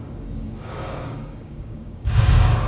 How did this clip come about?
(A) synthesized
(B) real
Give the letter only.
A